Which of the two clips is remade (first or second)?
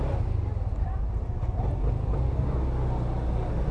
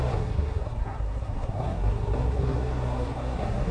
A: second